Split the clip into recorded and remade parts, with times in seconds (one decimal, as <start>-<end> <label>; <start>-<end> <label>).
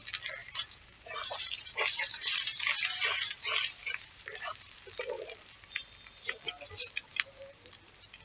0.0-0.4 recorded; 0.4-4.8 remade; 4.8-7.1 recorded; 7.1-7.7 remade; 7.7-8.2 recorded